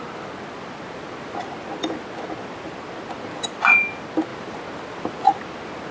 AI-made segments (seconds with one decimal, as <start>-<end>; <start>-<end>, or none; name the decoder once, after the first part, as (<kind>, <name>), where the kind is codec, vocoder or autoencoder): none